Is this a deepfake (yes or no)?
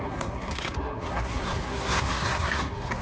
yes